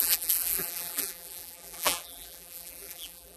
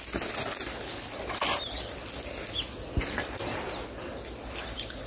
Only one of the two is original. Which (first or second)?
second